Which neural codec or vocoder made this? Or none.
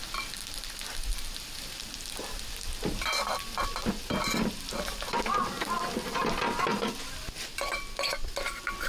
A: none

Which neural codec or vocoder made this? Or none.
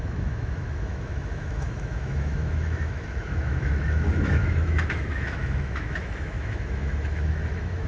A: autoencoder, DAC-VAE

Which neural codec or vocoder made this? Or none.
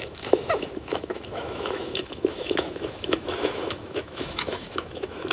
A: autoencoder, DAC-VAE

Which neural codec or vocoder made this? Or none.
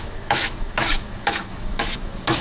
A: autoencoder, DAC-VAE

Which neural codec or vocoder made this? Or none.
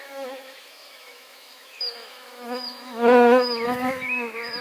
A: autoencoder, DAC-VAE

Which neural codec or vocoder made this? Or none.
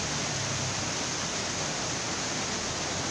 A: none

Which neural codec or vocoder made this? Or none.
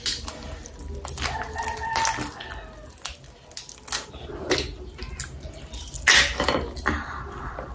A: none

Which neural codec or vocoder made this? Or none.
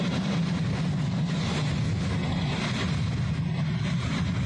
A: none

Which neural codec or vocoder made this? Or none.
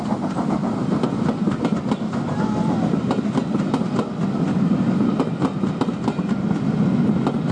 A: none